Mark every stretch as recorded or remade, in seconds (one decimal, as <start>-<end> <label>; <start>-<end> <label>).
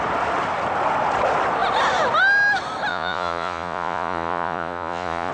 0.0-2.9 recorded; 2.9-5.3 remade